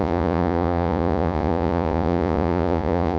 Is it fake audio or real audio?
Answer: fake